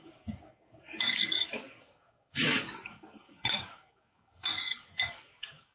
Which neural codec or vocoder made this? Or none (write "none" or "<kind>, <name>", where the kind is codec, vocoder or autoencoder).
codec, DAC